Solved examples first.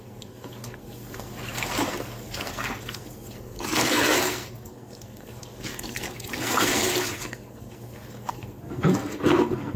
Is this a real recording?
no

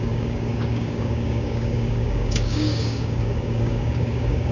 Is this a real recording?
no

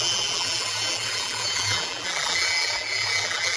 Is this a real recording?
no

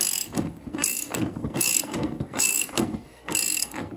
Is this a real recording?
no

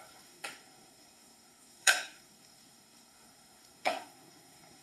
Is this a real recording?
no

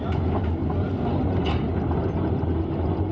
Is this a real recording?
yes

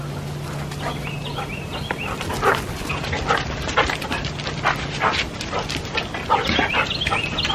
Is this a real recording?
yes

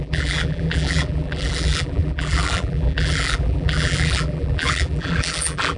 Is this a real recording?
no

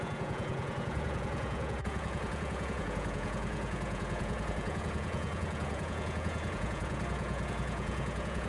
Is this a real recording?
no